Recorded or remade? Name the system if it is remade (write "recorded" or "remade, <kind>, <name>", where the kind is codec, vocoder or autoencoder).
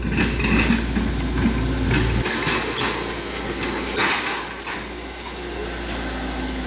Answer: recorded